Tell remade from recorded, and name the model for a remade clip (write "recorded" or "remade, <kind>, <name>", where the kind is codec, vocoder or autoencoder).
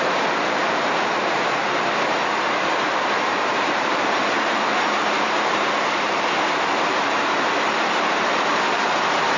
remade, vocoder, BigVGAN v2